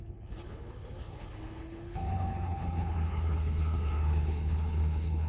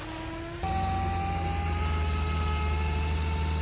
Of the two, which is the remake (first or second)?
first